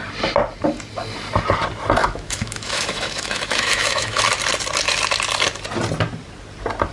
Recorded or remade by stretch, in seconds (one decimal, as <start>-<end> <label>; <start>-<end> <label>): 0.0-2.0 recorded; 2.0-4.2 remade; 4.2-6.9 recorded